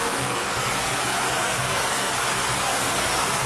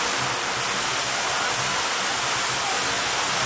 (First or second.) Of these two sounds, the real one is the second